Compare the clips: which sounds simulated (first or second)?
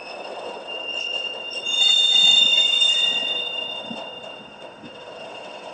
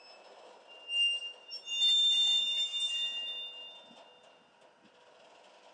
first